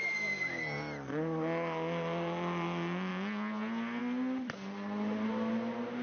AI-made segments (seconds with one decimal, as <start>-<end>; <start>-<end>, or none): none